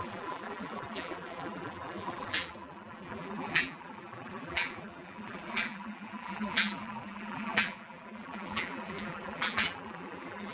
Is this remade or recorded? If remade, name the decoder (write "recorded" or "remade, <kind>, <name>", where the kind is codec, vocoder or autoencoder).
remade, vocoder, BigVGAN v2